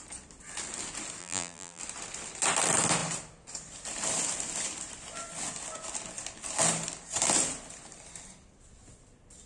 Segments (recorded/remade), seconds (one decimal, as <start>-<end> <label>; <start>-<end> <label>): 0.0-1.2 recorded; 1.2-1.8 remade; 1.8-9.5 recorded